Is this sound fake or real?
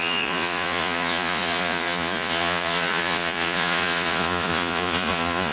fake